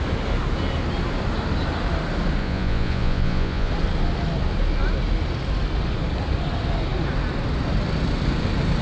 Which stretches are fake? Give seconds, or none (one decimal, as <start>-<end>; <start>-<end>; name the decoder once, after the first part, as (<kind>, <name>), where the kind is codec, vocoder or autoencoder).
2.4-3.7 (vocoder, Vocos)

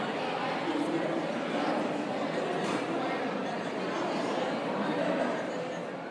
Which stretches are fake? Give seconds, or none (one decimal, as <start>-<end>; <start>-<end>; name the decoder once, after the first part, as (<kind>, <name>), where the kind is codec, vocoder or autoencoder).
none

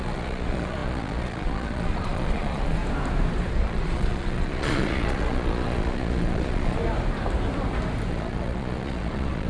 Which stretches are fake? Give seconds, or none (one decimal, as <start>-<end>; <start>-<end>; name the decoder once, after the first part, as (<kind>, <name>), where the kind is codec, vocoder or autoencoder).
0.0-2.8 (vocoder, Vocos); 3.5-6.8; 8.1-9.5